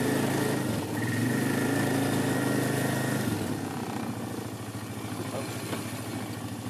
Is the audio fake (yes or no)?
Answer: no